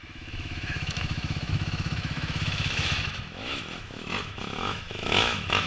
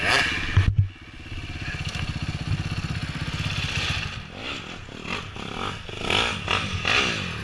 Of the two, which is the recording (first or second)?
second